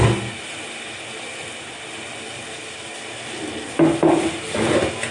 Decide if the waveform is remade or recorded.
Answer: recorded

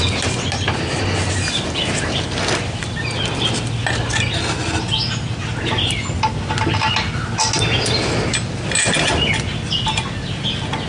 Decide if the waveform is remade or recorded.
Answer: recorded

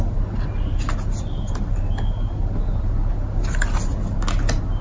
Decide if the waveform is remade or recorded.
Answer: recorded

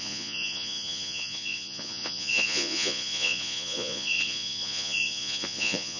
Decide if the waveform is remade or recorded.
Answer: remade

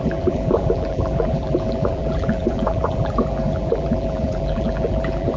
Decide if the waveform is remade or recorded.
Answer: remade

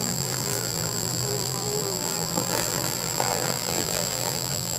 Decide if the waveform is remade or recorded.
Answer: remade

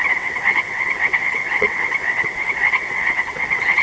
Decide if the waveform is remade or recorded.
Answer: remade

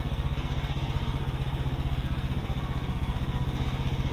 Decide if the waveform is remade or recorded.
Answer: remade